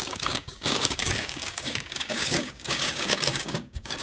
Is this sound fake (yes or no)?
yes